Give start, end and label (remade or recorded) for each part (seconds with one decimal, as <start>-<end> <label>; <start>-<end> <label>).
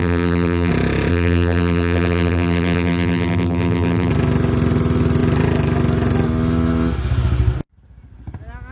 0.0-0.7 remade; 0.7-1.1 recorded; 1.1-4.1 remade; 4.1-8.7 recorded